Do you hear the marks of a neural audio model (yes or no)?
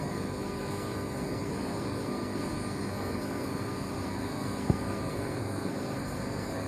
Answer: yes